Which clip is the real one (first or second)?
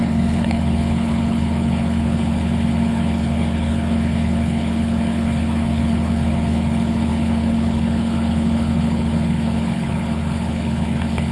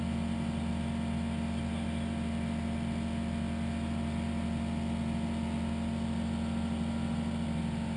second